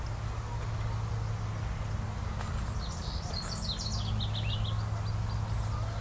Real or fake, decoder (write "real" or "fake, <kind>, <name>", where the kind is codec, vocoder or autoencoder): real